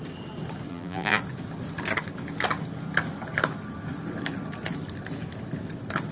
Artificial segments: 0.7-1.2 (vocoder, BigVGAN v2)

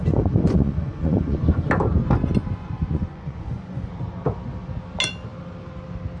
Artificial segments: 0.0-1.7 (vocoder, Vocos); 2.4-3.9